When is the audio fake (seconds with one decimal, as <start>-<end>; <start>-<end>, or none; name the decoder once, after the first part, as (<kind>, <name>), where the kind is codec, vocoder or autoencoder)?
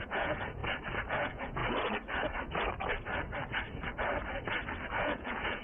0.0-0.6 (vocoder, Vocos); 1.1-1.6; 5.0-5.6